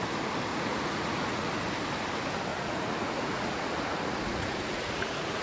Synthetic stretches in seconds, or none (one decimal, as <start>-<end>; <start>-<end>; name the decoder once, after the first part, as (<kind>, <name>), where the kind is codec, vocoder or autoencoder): 0.5-1.5 (vocoder, Vocos); 2.5-5.4